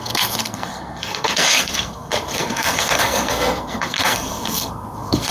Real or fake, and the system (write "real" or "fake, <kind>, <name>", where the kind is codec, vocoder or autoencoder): fake, codec, SNAC